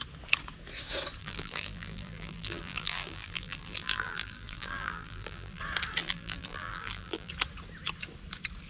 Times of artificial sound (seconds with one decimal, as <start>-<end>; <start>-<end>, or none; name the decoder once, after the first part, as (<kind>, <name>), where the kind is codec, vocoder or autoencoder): 1.2-5.6 (vocoder, BigVGAN v2); 6.0-7.3